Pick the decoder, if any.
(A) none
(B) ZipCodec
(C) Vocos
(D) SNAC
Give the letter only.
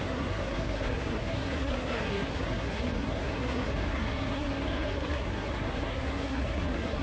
D